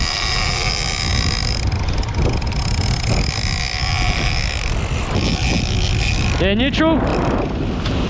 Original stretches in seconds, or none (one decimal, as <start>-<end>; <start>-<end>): 0.0-8.1